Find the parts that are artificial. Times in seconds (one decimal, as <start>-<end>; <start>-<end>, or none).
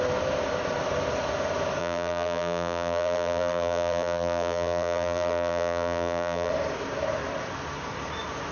1.8-6.5